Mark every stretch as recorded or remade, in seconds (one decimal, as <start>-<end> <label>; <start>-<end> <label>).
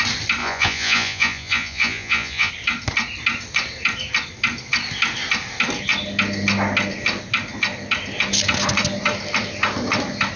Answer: 0.0-0.4 recorded; 0.4-2.5 remade; 2.5-10.4 recorded